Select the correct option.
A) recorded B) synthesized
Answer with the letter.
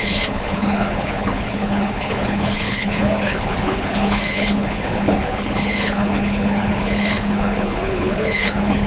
B